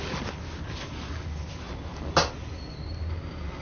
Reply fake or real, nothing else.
real